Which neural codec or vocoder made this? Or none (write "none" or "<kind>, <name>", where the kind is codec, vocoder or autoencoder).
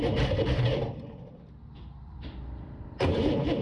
vocoder, BigVGAN v2